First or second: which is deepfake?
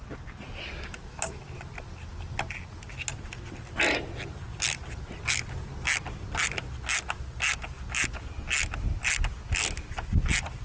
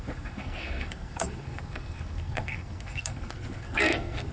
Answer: second